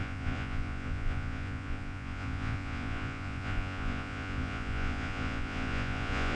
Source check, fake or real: fake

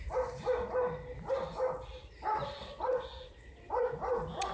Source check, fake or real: real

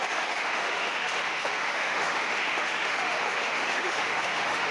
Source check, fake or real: fake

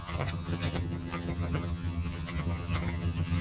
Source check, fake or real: fake